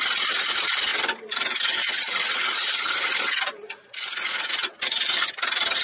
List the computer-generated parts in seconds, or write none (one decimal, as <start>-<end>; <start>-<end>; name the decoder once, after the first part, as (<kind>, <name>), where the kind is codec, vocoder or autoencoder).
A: 0.9-3.2 (vocoder, BigVGAN v2)